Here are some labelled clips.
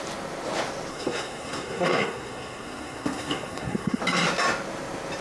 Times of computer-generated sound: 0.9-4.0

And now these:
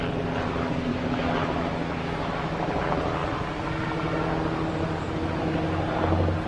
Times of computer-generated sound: 0.9-2.8

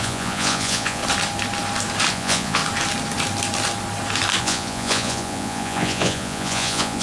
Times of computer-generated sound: 0.0-1.0; 2.1-2.6; 4.4-7.0

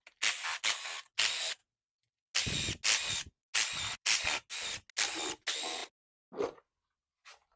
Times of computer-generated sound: none

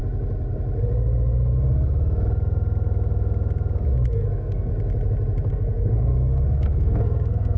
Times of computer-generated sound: 4.1-4.7; 5.5-7.6